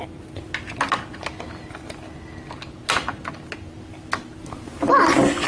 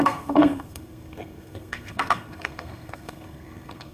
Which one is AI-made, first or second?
second